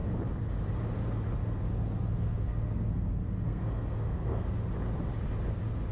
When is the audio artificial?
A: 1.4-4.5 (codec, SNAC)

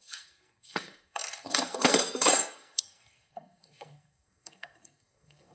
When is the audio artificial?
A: 0.0-5.5 (codec, SNAC)

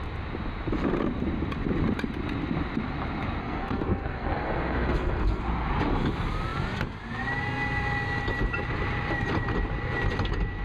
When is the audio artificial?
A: 3.4-5.4 (codec, SNAC)

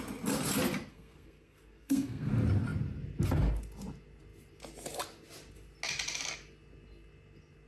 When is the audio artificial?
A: 0.9-2.3 (codec, SNAC)

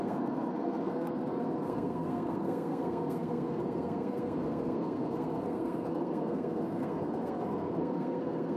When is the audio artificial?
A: 0.0-8.6 (codec, SNAC)

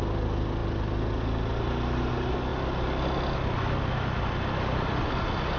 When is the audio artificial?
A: none